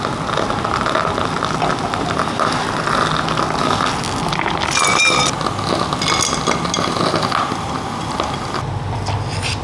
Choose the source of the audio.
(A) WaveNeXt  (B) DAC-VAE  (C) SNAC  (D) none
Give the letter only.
D